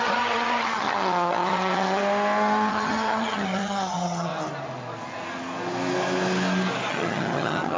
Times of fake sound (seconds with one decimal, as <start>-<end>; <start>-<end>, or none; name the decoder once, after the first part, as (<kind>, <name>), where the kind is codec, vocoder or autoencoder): 0.0-2.0 (vocoder, HiFi-GAN); 2.7-4.3; 6.9-7.8